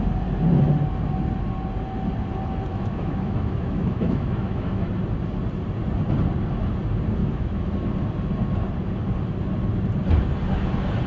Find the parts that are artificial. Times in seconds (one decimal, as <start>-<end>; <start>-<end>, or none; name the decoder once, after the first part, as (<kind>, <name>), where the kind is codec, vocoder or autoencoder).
2.7-4.9 (autoencoder, DAC-VAE); 7.2-7.7